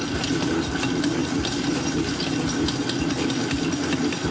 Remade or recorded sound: recorded